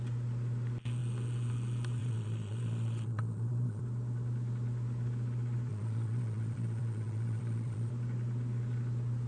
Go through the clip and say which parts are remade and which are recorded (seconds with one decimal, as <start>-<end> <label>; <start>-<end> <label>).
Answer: 0.0-2.0 recorded; 2.0-3.8 remade; 3.8-5.7 recorded; 5.7-7.9 remade; 7.9-9.3 recorded